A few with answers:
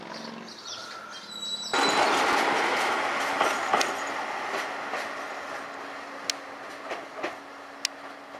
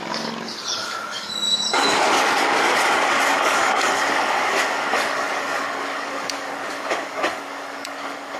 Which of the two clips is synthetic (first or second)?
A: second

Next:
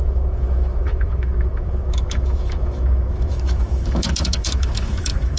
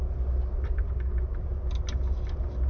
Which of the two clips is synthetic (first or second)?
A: first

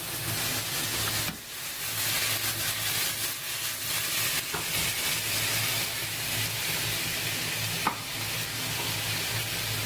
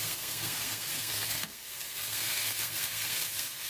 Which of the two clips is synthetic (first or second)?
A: second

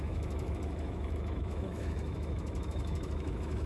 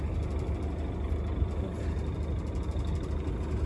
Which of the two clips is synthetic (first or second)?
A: first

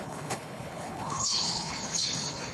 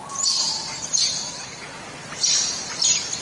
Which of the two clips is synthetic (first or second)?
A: first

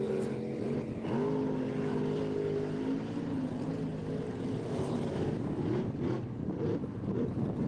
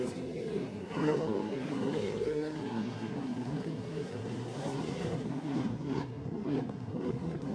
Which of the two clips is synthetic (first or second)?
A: second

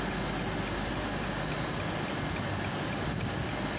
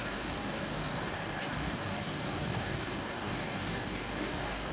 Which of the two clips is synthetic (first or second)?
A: second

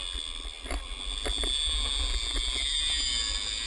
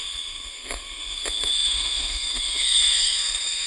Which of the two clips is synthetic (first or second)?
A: second